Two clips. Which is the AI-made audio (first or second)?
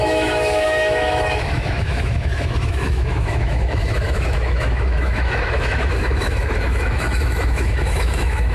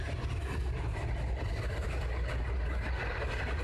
first